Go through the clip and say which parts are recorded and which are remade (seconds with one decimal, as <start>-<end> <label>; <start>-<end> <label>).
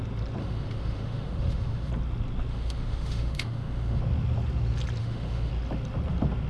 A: 0.0-0.4 recorded; 0.4-1.9 remade; 1.9-2.5 recorded; 2.5-4.0 remade; 4.0-5.0 recorded; 5.0-5.5 remade; 5.5-6.5 recorded